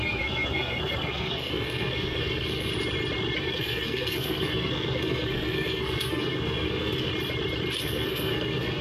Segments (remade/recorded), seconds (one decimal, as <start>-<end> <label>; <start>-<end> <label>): 0.0-2.7 remade; 2.7-3.4 recorded; 3.4-7.1 remade; 7.1-7.8 recorded; 7.8-8.8 remade